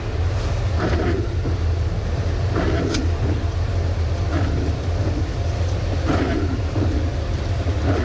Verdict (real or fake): fake